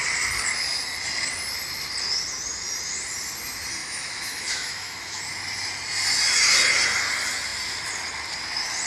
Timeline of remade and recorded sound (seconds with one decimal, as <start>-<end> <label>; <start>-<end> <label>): 0.0-3.8 recorded; 3.8-5.2 remade; 5.2-8.9 recorded